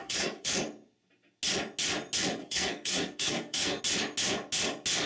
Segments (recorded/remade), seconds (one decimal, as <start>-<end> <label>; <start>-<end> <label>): 0.0-0.5 remade; 0.5-2.4 recorded; 2.4-3.8 remade; 3.8-5.1 recorded